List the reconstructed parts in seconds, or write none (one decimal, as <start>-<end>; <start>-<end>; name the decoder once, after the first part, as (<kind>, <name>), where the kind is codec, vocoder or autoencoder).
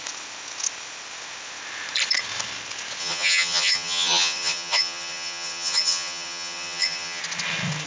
3.0-7.2 (vocoder, HiFi-GAN)